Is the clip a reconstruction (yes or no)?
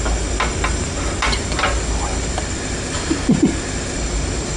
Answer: no